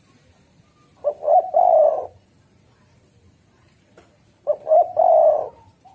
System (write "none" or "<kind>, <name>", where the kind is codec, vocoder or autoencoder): vocoder, BigVGAN v2